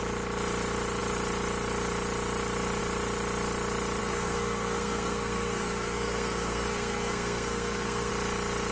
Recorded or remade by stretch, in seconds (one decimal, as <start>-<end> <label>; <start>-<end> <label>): 0.0-4.0 recorded; 4.0-8.1 remade; 8.1-8.7 recorded